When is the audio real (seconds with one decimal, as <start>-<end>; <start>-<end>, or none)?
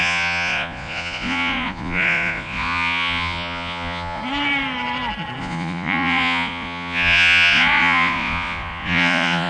4.2-5.4